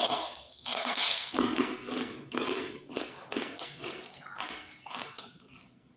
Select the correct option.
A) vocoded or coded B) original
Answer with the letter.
A